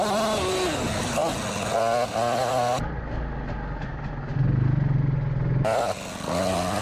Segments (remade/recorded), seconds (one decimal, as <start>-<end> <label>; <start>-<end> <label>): 0.0-6.8 recorded